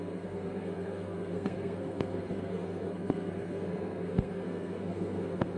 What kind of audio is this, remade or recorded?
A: remade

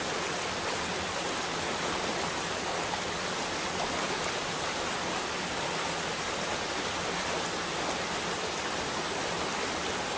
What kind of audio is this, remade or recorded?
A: recorded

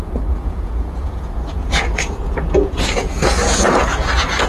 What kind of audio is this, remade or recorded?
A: remade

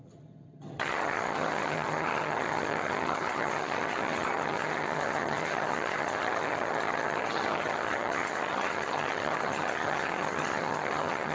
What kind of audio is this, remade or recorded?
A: remade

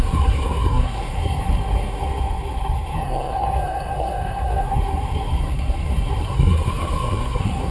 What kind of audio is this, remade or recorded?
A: remade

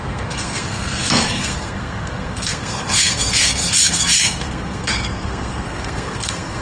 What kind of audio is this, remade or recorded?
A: remade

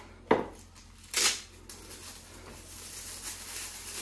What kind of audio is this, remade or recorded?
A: recorded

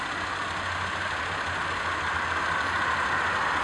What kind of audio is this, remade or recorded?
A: recorded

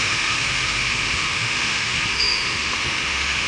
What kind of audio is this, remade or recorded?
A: remade